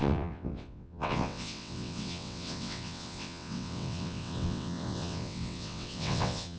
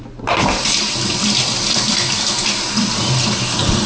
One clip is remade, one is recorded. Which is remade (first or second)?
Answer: first